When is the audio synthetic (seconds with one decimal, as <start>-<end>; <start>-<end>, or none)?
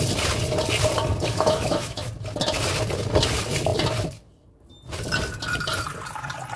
1.3-2.1